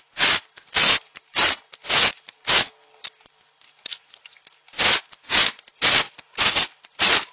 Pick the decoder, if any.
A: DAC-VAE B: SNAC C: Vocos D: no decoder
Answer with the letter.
D